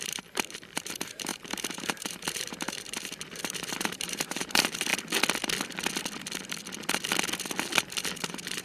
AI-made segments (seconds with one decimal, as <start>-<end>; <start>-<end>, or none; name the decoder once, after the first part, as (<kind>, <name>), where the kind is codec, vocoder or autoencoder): 0.0-4.9 (vocoder, BigVGAN v2); 8.0-8.6